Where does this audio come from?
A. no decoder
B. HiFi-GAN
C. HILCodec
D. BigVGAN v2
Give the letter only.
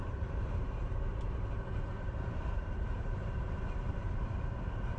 D